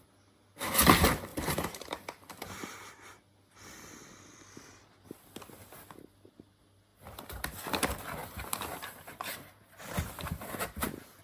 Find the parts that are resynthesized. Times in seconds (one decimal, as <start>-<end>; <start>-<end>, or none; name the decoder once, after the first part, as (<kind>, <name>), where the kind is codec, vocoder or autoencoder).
1.3-2.9 (vocoder, BigVGAN v2); 8.2-10.6